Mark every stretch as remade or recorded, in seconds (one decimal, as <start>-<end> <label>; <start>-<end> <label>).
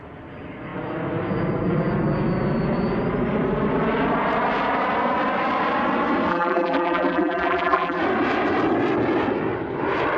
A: 0.0-6.3 recorded; 6.3-8.0 remade; 8.0-10.2 recorded